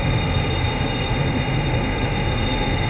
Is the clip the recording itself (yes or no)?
no